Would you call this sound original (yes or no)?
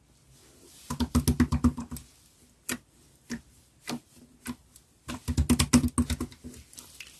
yes